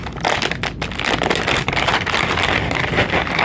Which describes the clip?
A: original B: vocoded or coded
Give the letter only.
A